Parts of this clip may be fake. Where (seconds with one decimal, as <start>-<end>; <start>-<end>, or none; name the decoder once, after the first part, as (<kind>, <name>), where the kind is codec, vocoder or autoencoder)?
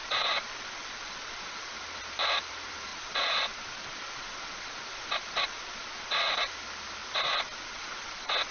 0.0-1.8 (vocoder, Vocos); 2.9-6.5; 7.0-8.5